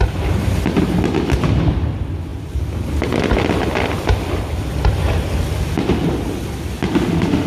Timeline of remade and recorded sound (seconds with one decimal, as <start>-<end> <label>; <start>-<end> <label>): 0.0-6.9 recorded; 6.9-7.5 remade